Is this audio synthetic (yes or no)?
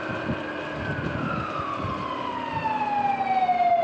no